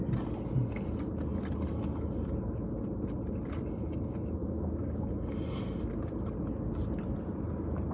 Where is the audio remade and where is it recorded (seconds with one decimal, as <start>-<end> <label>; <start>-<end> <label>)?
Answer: 0.0-4.4 recorded; 4.4-5.1 remade; 5.1-7.9 recorded